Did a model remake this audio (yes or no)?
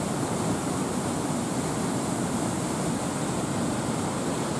no